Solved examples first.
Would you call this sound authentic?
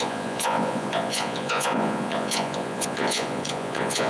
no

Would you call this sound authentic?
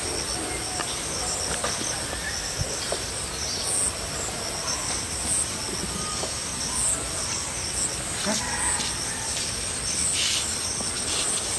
yes